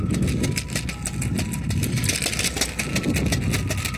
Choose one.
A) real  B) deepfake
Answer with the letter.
A